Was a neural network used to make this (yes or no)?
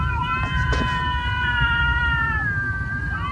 no